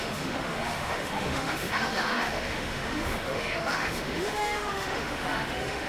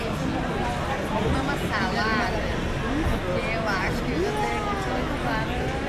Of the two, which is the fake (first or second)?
first